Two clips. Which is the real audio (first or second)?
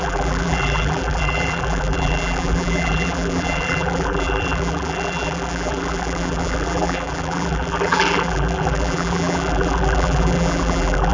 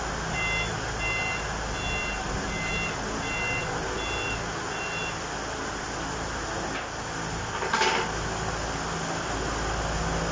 second